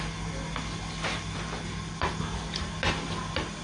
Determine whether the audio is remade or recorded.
recorded